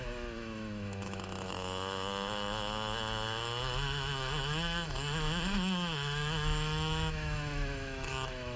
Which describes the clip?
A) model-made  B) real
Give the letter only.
A